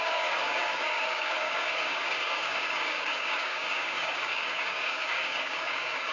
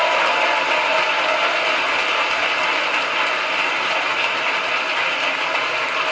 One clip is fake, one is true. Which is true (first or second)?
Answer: second